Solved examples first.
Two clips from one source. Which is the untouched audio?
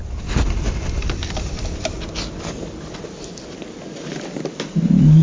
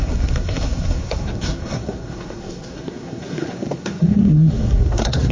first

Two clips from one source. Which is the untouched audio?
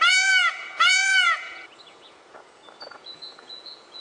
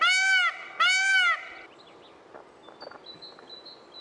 second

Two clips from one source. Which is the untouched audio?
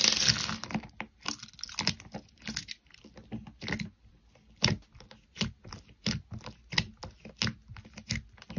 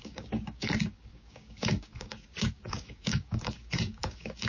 first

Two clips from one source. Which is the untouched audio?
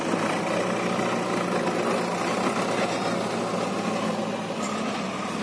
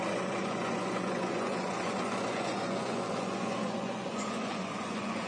first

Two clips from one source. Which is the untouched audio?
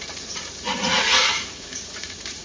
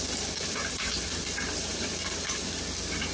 second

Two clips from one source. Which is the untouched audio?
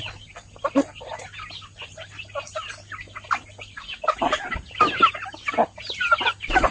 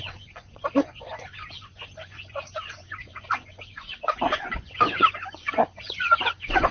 first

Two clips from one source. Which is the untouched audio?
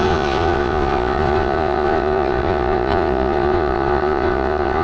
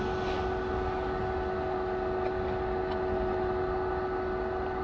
second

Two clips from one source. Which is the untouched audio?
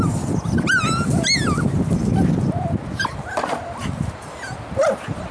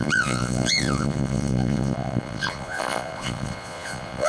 first